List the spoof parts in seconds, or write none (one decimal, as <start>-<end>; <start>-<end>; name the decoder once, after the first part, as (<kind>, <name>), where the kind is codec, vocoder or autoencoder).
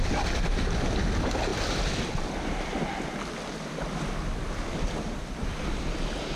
none